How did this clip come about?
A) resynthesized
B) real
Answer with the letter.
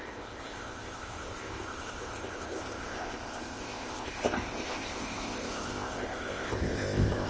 A